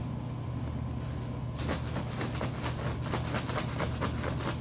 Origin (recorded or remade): recorded